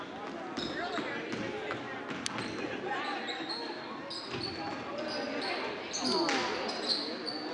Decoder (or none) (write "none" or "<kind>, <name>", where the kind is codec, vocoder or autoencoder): none